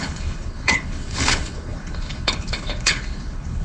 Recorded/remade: remade